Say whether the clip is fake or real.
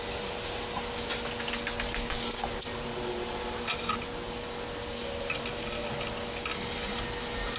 real